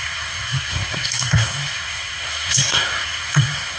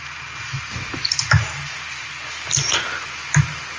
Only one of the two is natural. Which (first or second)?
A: second